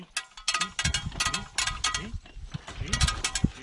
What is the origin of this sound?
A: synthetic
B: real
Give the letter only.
B